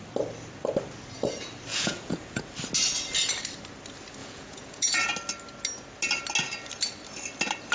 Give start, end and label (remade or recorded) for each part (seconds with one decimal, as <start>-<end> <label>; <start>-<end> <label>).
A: 0.0-1.7 recorded; 1.7-2.4 remade; 2.4-4.2 recorded; 4.2-5.1 remade; 5.1-7.7 recorded